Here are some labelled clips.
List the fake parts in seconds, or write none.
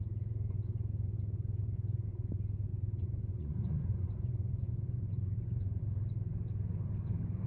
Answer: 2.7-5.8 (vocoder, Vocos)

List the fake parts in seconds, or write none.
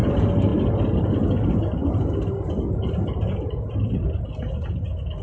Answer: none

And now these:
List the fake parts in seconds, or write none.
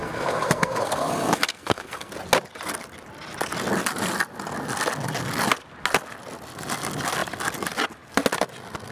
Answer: 0.0-2.1 (codec, SNAC)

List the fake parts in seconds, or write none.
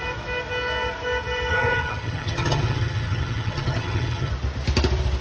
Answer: 1.5-4.3 (vocoder, HiFi-GAN)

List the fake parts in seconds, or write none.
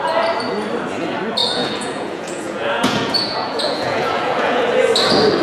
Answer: 1.4-4.6 (vocoder, Vocos)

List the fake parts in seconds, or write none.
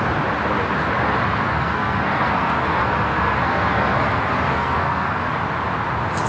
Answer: 1.5-5.3 (codec, SNAC)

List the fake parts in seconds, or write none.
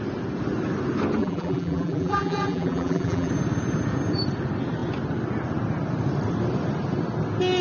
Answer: 1.2-3.3 (vocoder, BigVGAN v2)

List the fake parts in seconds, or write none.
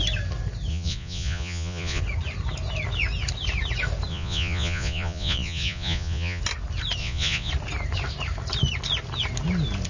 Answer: 0.7-2.0 (vocoder, Vocos); 4.1-6.4; 7.0-7.5